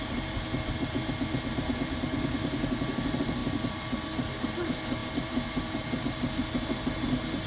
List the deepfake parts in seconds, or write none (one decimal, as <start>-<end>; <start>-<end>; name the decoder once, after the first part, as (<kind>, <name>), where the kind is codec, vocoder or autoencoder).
3.4-4.0 (vocoder, BigVGAN v2); 5.0-6.0